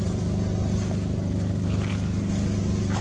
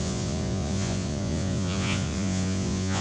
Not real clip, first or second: second